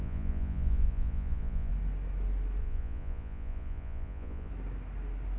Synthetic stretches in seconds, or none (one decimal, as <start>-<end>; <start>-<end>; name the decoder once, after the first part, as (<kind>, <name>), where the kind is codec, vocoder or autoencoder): 0.0-1.7 (vocoder, Vocos); 2.6-4.5